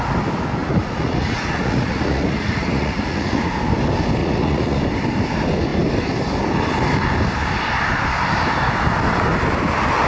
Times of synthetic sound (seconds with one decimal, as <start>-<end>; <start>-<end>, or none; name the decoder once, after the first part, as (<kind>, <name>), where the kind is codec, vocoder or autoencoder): 0.6-3.5 (vocoder, Vocos); 4.2-4.8